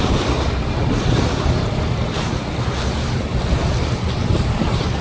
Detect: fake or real real